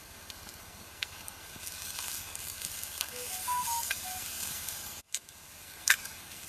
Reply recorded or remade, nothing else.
remade